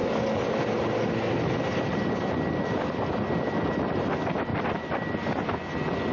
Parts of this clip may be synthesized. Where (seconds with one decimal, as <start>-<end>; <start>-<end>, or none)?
4.5-5.1